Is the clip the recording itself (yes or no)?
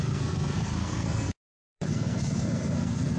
no